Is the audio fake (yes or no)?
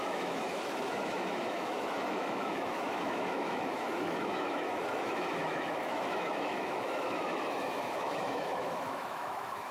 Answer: yes